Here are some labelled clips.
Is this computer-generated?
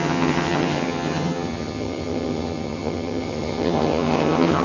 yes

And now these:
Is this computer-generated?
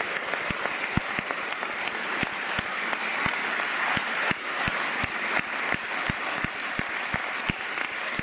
no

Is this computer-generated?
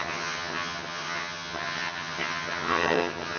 yes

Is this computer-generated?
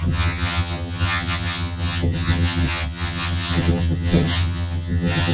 yes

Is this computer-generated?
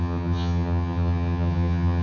yes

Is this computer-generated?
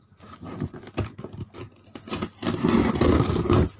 no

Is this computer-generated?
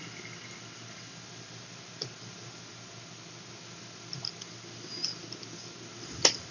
no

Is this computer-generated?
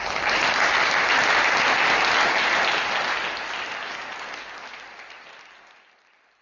no